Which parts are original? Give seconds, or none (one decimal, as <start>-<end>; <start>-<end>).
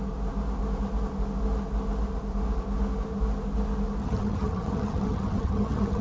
0.0-4.0